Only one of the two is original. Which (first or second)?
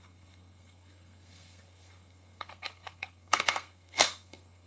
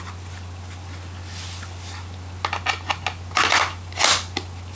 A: second